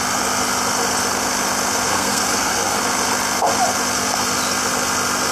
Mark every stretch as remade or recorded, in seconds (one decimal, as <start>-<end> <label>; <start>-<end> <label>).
0.0-1.9 recorded; 1.9-2.8 remade; 2.8-5.3 recorded